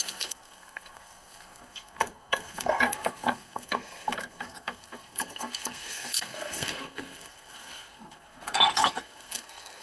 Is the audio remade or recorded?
remade